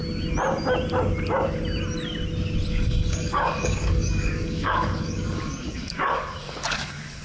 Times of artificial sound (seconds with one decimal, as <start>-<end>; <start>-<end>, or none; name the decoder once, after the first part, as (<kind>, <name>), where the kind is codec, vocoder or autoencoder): 2.7-7.2 (codec, DAC)